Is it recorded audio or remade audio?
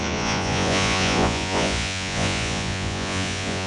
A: remade